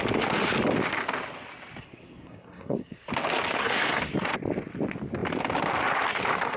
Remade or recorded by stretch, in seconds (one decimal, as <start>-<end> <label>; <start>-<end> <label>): 0.0-1.8 recorded; 1.8-3.1 remade; 3.1-3.6 recorded; 3.6-4.1 remade; 4.1-6.6 recorded